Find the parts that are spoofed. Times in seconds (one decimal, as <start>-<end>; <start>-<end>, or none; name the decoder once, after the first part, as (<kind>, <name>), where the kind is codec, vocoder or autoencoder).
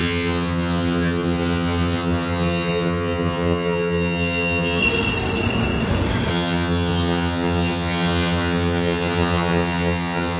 0.0-4.8 (vocoder, HiFi-GAN); 6.3-10.4